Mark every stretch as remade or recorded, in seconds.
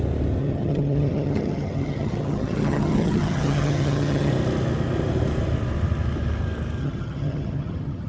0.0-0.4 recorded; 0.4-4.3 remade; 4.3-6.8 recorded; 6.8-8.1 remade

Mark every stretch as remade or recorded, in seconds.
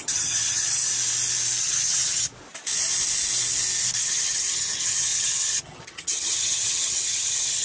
0.0-0.9 remade; 0.9-1.6 recorded; 1.6-2.3 remade; 2.3-4.0 recorded; 4.0-7.6 remade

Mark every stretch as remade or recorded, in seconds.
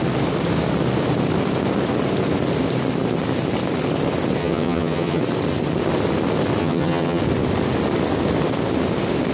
0.0-4.4 recorded; 4.4-5.2 remade; 5.2-6.6 recorded; 6.6-7.2 remade; 7.2-9.3 recorded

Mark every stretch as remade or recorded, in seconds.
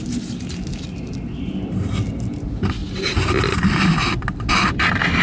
0.0-5.2 recorded